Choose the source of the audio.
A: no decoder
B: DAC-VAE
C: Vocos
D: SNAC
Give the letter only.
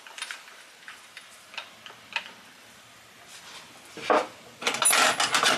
A